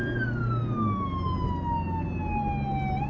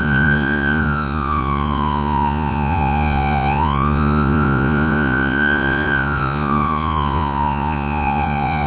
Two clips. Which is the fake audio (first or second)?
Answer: second